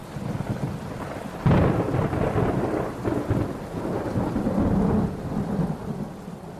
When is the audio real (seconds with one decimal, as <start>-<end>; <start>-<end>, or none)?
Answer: 0.0-6.6